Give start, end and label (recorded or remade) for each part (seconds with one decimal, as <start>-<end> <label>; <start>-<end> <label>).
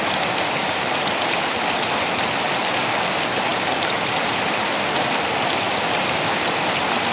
0.0-0.6 recorded; 0.6-1.6 remade; 1.6-7.1 recorded